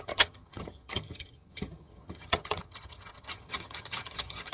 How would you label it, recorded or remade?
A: remade